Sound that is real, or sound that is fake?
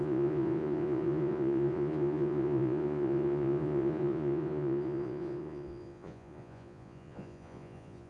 fake